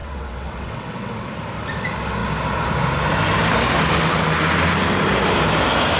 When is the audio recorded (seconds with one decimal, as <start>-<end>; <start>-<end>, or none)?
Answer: 1.3-6.0